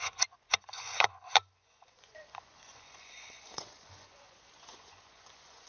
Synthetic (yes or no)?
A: yes